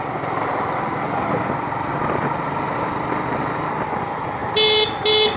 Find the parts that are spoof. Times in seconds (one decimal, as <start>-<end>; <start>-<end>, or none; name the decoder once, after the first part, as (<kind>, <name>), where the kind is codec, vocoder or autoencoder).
none